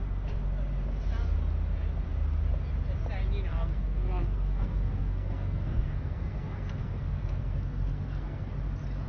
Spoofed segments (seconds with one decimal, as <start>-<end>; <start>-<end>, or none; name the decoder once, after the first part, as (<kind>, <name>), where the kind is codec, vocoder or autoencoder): 3.5-8.5 (codec, SNAC)